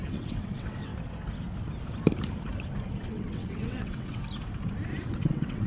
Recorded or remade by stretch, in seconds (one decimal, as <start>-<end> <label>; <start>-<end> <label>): 0.0-0.9 remade; 0.9-3.0 recorded; 3.0-4.2 remade; 4.2-5.0 recorded; 5.0-5.7 remade